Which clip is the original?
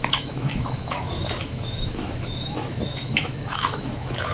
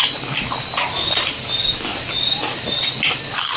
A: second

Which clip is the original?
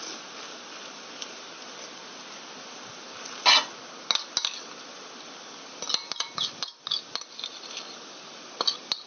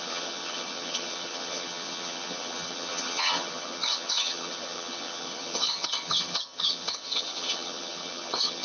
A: first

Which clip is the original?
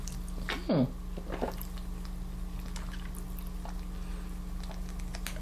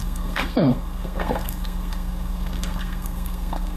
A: first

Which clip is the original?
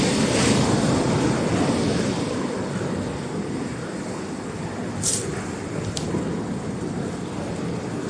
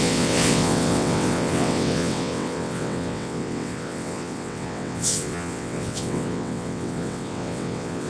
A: first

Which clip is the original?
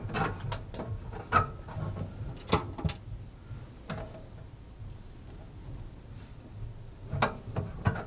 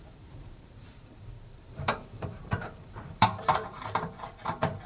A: first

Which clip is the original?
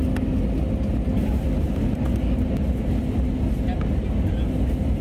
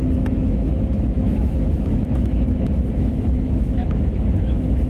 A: first